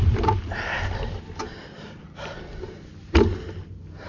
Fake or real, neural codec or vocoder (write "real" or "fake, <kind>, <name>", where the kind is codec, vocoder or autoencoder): real